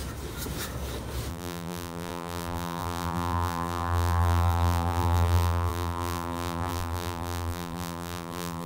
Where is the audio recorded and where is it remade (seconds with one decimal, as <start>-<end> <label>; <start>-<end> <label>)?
0.0-1.3 recorded; 1.3-8.7 remade